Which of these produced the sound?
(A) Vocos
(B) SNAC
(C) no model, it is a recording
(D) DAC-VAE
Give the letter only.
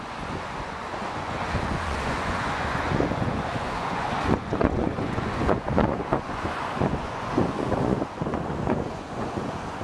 A